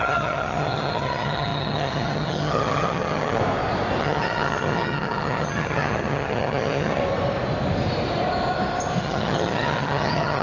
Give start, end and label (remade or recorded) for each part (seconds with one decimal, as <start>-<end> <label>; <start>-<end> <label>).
0.0-3.4 remade; 3.4-4.0 recorded; 4.0-7.0 remade; 7.0-9.0 recorded; 9.0-10.4 remade